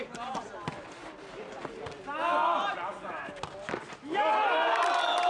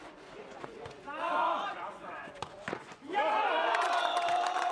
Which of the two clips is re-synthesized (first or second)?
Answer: second